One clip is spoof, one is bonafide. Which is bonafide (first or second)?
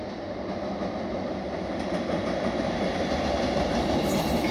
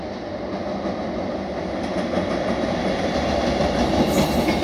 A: second